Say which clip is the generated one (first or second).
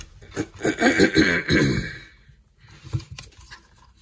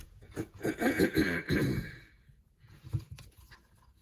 second